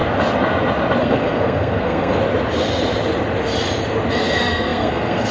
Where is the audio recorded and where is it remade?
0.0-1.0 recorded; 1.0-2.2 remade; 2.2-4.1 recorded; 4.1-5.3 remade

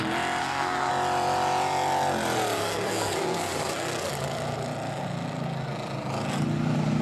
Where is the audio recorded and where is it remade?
0.0-0.4 recorded; 0.4-0.9 remade; 0.9-2.6 recorded; 2.6-4.1 remade; 4.1-7.0 recorded

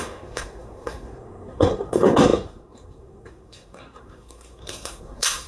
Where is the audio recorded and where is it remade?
0.0-5.5 remade

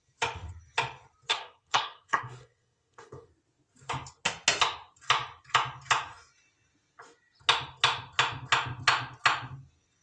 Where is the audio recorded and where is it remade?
0.0-1.3 recorded; 1.3-3.3 remade; 3.3-10.0 recorded

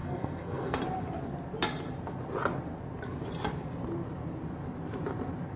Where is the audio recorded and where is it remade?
0.0-0.8 remade; 0.8-5.6 recorded

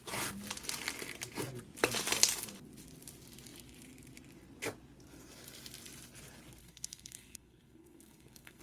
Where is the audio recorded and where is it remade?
0.0-6.6 recorded; 6.6-8.6 remade

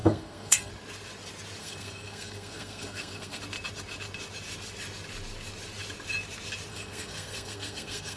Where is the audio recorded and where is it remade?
0.0-0.7 remade; 0.7-1.6 recorded; 1.6-3.4 remade; 3.4-6.7 recorded; 6.7-8.2 remade

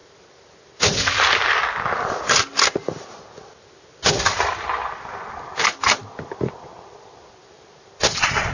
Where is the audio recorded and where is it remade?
0.0-8.5 recorded